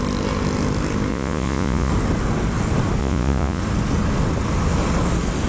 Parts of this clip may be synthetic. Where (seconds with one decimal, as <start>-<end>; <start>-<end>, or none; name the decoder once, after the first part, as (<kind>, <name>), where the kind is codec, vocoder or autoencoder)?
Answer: 1.1-1.9 (vocoder, Vocos); 3.0-3.6